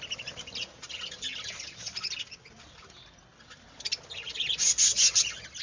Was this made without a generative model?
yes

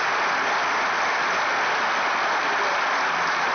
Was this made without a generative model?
yes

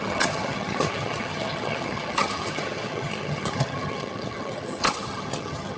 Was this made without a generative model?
no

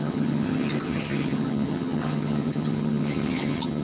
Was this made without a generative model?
no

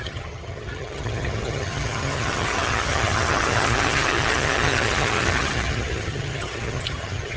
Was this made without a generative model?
no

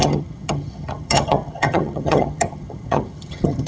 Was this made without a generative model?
no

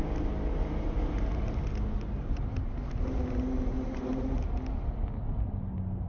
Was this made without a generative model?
yes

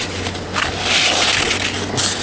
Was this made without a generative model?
yes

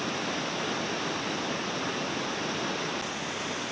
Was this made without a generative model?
yes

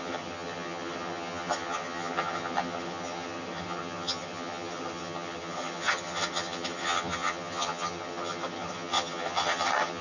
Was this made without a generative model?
no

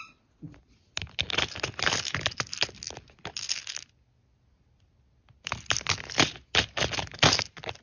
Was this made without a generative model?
yes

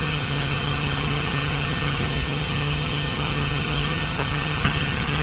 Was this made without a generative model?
no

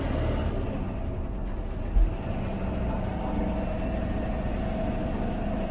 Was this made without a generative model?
yes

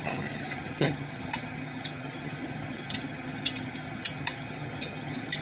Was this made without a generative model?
no